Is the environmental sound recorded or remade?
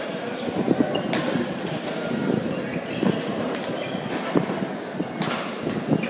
recorded